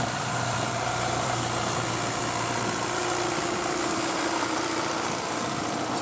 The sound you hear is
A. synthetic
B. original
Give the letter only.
A